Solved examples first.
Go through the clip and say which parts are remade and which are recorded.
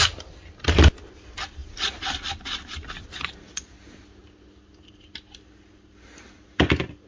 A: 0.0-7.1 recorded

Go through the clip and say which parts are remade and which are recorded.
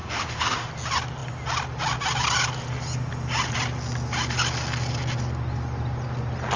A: 0.0-0.7 remade; 0.7-6.6 recorded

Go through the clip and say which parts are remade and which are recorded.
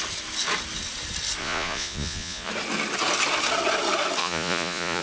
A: 0.0-1.4 recorded; 1.4-2.5 remade; 2.5-4.2 recorded; 4.2-5.0 remade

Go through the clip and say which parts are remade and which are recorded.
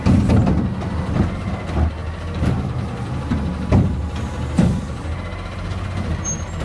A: 0.0-6.6 recorded